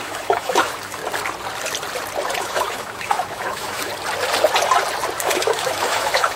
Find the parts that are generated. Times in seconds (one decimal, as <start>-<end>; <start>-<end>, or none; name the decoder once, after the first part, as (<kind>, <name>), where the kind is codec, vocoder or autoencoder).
0.0-1.0 (autoencoder, DAC-VAE); 2.4-3.9; 5.2-6.4